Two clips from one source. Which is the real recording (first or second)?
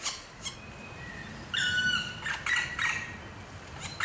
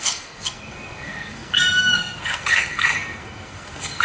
first